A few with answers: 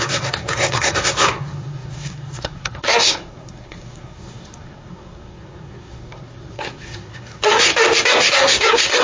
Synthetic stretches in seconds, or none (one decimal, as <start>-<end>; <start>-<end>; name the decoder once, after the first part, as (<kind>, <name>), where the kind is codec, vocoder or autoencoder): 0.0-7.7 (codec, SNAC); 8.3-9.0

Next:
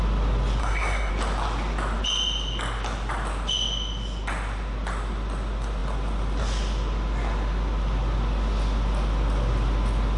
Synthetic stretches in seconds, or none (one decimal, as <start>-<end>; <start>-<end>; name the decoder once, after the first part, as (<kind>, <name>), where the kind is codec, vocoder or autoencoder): 0.6-1.1 (codec, SNAC)

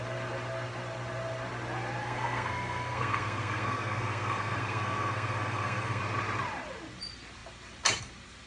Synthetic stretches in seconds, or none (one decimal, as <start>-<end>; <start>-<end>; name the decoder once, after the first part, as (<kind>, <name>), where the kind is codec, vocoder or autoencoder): 2.0-6.0 (codec, SNAC)

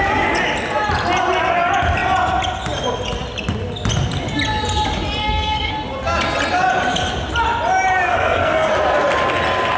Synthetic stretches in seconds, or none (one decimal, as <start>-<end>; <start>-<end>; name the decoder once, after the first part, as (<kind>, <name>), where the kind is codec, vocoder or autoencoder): 5.2-5.7 (codec, SNAC); 8.1-8.7

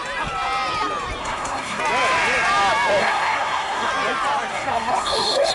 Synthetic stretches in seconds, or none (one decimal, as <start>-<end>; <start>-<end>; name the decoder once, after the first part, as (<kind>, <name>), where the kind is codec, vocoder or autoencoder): 1.2-1.8 (codec, SNAC); 3.0-3.9; 4.5-5.5

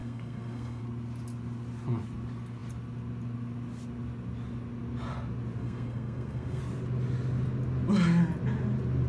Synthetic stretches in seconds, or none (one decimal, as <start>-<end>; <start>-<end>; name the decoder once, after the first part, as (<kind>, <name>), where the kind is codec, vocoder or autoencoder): 0.0-0.8 (codec, SNAC); 5.6-6.6

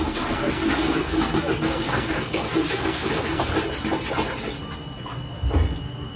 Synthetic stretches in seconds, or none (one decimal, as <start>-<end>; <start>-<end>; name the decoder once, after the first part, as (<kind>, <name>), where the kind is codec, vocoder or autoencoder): 0.0-3.5 (codec, SNAC); 5.8-6.2